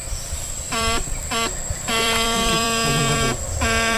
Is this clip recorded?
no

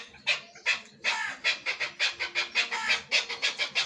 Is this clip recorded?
yes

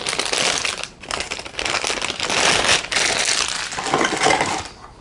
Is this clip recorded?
yes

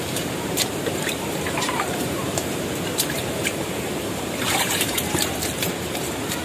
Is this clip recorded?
no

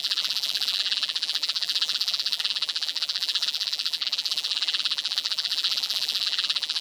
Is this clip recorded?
no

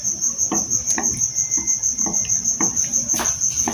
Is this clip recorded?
yes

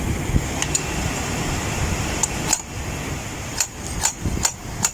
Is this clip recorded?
no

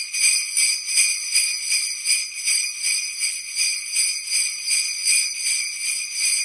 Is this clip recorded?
yes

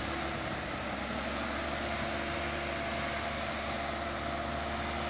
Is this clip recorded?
yes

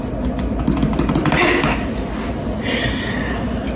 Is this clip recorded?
yes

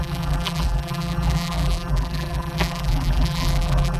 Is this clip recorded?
no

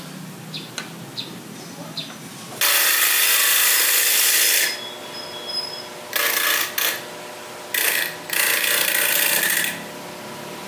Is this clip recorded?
yes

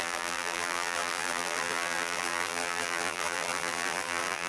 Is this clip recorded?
no